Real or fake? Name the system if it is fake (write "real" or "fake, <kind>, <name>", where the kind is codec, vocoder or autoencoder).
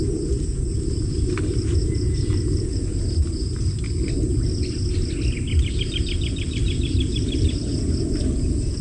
real